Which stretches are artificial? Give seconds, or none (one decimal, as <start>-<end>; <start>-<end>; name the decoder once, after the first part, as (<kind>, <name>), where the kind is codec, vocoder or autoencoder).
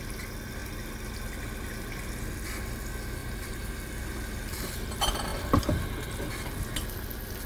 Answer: 3.2-3.7 (vocoder, BigVGAN v2)